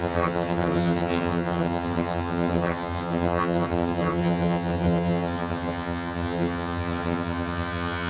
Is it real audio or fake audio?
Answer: fake